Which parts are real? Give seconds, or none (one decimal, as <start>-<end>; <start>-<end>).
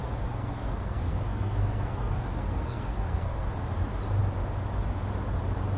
3.5-5.8